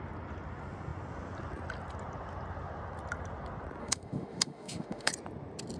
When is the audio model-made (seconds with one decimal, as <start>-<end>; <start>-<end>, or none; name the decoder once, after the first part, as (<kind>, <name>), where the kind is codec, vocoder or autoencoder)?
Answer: 3.8-5.1 (autoencoder, DAC-VAE)